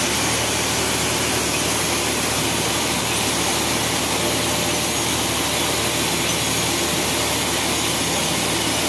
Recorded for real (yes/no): yes